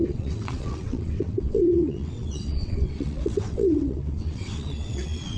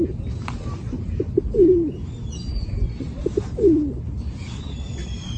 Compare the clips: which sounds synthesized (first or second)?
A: first